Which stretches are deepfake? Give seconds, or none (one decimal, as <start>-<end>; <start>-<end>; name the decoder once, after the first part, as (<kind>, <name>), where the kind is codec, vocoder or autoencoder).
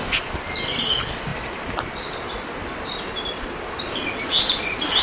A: none